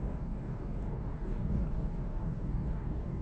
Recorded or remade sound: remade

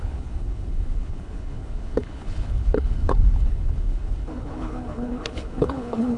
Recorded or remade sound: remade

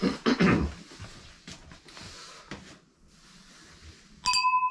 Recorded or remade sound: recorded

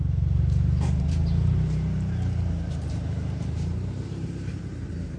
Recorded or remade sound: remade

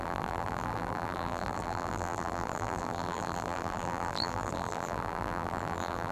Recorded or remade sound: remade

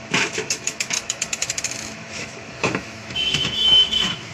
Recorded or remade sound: remade